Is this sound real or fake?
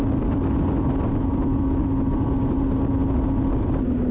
real